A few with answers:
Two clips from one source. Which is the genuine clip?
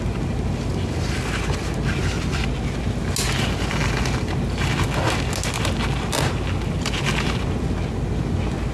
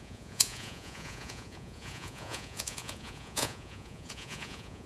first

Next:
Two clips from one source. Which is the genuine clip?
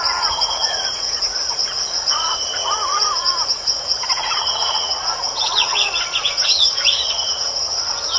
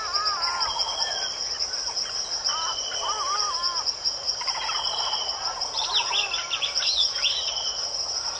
second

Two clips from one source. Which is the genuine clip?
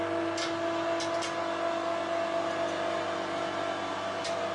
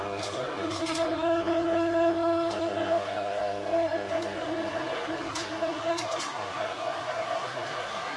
first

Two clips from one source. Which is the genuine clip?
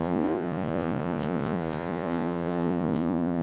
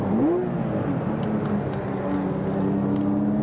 second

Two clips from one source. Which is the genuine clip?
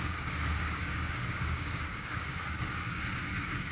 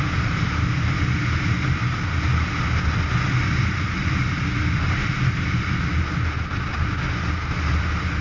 second